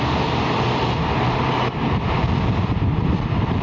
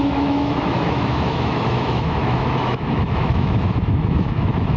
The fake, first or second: second